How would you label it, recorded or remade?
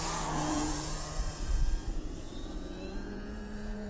remade